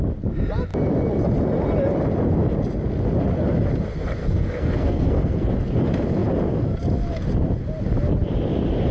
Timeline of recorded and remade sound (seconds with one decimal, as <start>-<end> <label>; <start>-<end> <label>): 0.0-4.2 recorded; 4.2-5.5 remade; 5.5-8.9 recorded